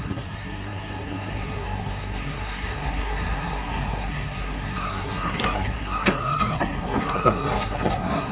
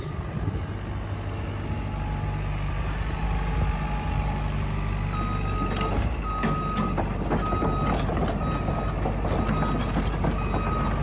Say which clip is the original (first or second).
second